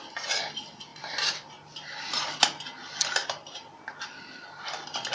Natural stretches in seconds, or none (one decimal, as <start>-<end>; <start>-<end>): 0.0-5.1